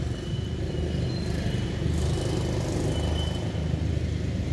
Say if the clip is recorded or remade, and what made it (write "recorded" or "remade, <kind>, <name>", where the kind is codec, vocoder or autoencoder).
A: recorded